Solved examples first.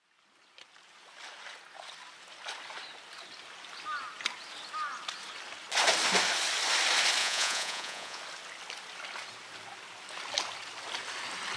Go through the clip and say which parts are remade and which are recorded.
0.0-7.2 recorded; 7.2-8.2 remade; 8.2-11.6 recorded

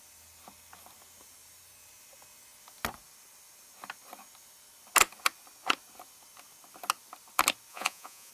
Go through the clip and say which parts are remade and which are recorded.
0.0-7.7 recorded; 7.7-8.3 remade

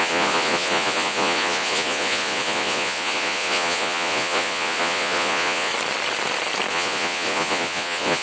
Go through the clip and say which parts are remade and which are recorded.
0.0-5.7 remade; 5.7-6.7 recorded; 6.7-8.2 remade

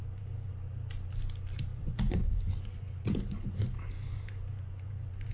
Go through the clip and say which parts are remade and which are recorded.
0.0-0.5 remade; 0.5-1.7 recorded; 1.7-5.3 remade

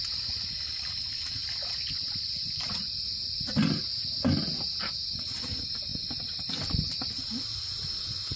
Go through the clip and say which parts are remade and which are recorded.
0.0-8.4 recorded

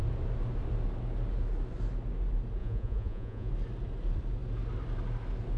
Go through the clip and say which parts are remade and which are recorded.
0.0-2.6 recorded; 2.6-3.5 remade; 3.5-5.6 recorded

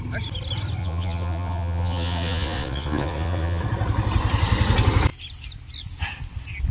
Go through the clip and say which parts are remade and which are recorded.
0.0-0.8 recorded; 0.8-3.6 remade; 3.6-6.7 recorded